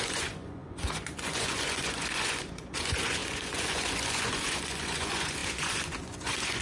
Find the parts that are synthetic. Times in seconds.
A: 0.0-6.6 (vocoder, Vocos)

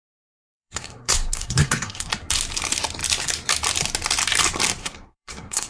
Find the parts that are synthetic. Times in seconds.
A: 0.0-2.1 (codec, SNAC); 4.8-5.7

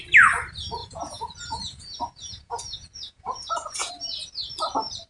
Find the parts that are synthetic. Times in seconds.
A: 0.8-3.9 (vocoder, Vocos)

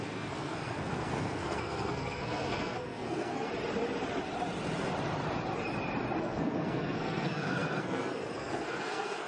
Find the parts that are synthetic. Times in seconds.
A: 0.0-3.5 (codec, SNAC); 6.2-9.3